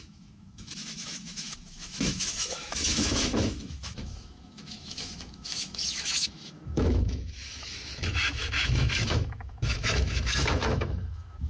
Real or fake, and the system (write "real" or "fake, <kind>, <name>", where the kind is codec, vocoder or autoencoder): fake, autoencoder, DAC-VAE